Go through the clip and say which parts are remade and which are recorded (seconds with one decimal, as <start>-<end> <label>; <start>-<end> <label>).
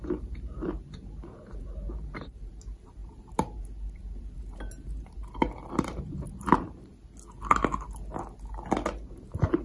0.0-6.9 remade; 6.9-9.0 recorded; 9.0-9.6 remade